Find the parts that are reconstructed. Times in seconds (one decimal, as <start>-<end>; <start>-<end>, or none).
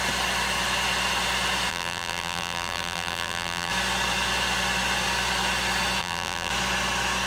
1.7-3.7; 6.0-6.5